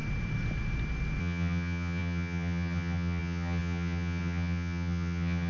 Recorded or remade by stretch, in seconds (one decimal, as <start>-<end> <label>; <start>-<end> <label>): 0.0-1.2 recorded; 1.2-5.5 remade

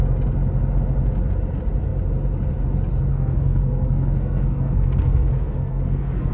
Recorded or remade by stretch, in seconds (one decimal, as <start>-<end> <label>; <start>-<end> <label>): 0.0-3.1 recorded; 3.1-6.3 remade

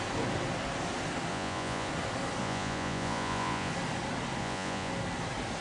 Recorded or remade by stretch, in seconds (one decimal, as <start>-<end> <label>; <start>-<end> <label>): 0.0-1.3 recorded; 1.3-1.9 remade; 1.9-2.4 recorded; 2.4-3.7 remade; 3.7-4.4 recorded; 4.4-4.9 remade; 4.9-5.6 recorded

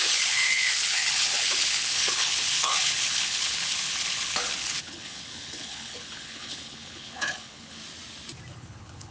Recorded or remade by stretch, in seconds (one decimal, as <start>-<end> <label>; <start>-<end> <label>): 0.0-7.8 remade; 7.8-8.5 recorded; 8.5-9.1 remade

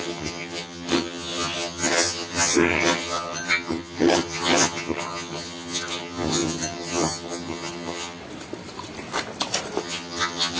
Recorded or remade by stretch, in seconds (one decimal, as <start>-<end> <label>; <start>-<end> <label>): 0.0-8.2 remade; 8.2-9.8 recorded; 9.8-10.6 remade